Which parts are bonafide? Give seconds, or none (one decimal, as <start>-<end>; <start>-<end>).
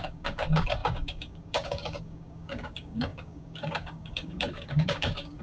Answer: none